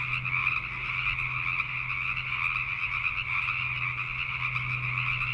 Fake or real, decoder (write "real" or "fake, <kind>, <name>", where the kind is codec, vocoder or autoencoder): real